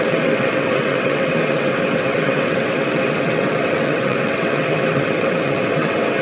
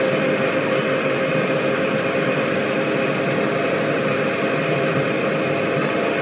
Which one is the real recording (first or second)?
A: second